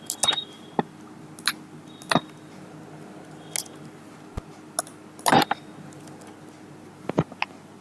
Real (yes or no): yes